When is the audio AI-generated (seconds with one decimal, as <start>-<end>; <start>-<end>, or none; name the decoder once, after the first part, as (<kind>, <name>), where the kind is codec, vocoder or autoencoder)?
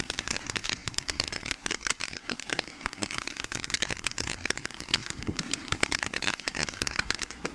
0.0-7.5 (codec, SNAC)